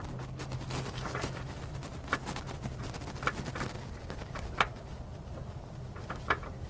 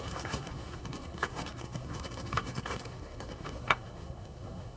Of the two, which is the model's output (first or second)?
second